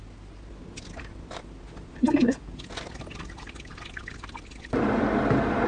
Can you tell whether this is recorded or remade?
recorded